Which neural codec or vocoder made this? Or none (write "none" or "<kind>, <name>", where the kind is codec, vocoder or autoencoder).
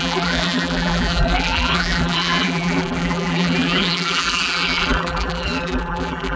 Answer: vocoder, BigVGAN v2